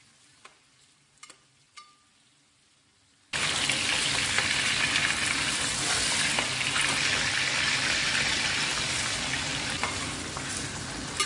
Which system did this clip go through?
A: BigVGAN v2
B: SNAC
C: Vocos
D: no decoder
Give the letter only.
D